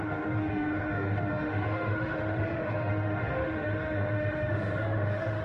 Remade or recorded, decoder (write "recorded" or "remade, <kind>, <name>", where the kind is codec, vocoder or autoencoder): remade, autoencoder, DAC-VAE